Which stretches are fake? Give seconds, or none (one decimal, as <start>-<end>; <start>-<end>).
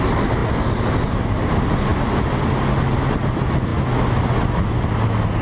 none